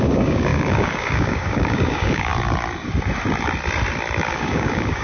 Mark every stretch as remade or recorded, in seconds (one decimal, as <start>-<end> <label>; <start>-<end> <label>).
0.0-2.3 remade; 2.3-4.3 recorded; 4.3-5.0 remade